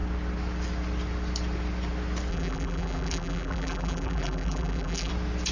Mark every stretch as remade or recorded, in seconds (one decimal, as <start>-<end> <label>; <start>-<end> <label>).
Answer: 0.0-2.3 recorded; 2.3-5.1 remade; 5.1-5.5 recorded